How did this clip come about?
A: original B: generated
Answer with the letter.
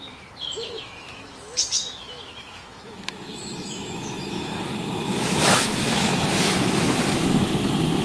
B